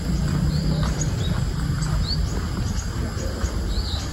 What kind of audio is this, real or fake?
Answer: real